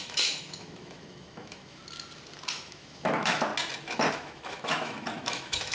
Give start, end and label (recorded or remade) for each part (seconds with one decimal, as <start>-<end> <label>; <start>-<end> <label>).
0.0-1.8 remade; 1.8-2.5 recorded; 2.5-3.5 remade; 3.5-4.1 recorded; 4.1-5.7 remade